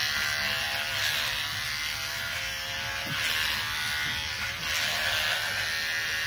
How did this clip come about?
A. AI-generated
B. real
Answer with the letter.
B